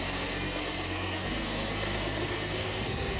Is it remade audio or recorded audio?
remade